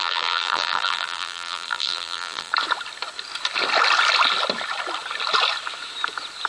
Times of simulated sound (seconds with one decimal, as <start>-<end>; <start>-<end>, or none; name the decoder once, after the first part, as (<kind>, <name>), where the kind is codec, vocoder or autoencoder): 0.0-2.5 (vocoder, BigVGAN v2)